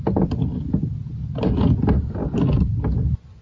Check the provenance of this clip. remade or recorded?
recorded